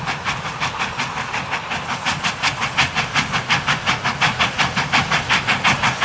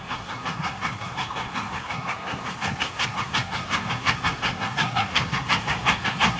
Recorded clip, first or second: first